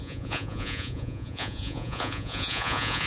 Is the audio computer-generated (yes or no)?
yes